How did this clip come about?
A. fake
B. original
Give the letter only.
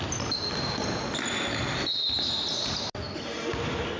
B